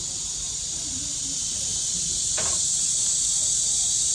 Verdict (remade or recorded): remade